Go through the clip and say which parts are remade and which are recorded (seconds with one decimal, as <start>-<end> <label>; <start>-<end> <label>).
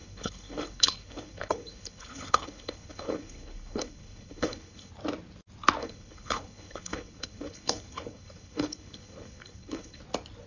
0.0-4.9 remade; 4.9-5.8 recorded; 5.8-10.0 remade; 10.0-10.5 recorded